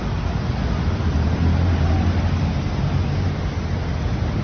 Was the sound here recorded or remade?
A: recorded